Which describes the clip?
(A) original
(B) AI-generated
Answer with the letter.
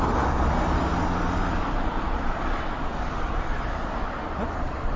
A